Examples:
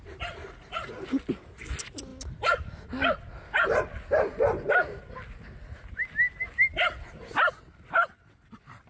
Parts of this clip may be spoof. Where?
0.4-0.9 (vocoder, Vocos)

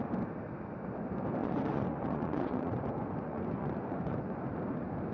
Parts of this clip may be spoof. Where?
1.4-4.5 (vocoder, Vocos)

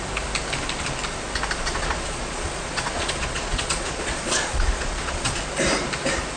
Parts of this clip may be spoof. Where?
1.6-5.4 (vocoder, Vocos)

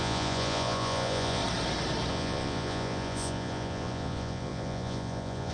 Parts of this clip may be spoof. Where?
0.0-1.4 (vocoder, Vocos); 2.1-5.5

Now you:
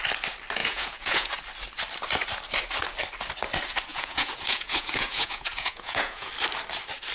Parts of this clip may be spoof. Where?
0.6-1.3 (vocoder, Vocos); 3.9-6.3